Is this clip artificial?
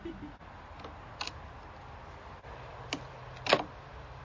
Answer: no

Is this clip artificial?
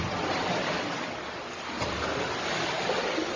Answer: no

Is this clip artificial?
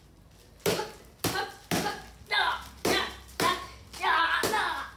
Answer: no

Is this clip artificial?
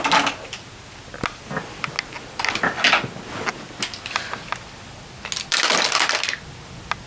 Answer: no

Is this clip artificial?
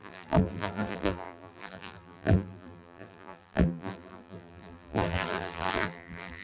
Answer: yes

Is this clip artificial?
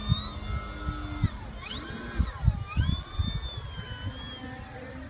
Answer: no